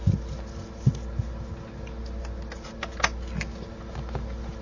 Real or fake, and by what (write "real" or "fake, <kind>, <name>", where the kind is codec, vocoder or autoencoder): real